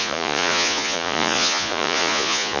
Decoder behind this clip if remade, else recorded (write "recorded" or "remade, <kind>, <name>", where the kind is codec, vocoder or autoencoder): remade, vocoder, Vocos